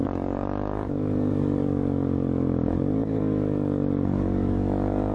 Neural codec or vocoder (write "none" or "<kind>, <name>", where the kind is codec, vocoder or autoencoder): codec, DAC